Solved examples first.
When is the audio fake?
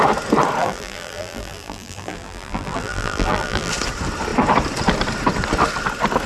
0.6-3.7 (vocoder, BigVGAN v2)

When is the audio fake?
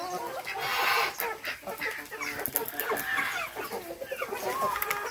none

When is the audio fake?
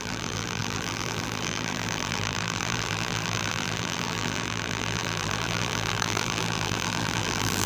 0.0-7.7 (vocoder, BigVGAN v2)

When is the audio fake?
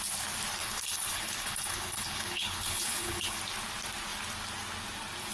0.6-3.4 (codec, HILCodec)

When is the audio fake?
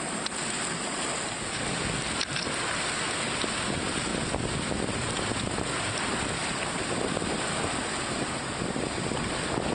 4.1-5.4 (vocoder, BigVGAN v2)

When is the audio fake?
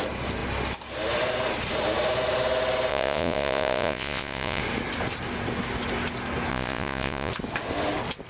2.9-4.6 (vocoder, Vocos); 6.5-7.3